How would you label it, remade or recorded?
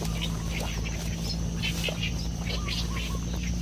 recorded